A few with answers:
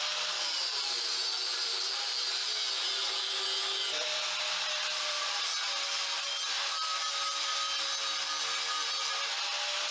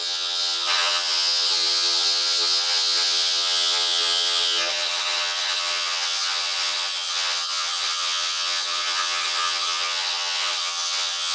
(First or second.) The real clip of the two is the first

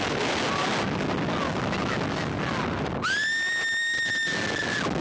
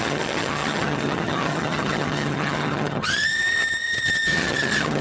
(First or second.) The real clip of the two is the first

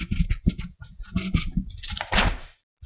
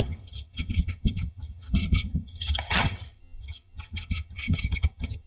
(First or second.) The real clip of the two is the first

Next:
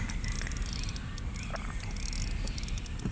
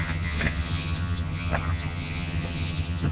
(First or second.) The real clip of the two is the first